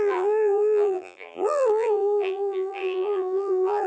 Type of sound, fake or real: fake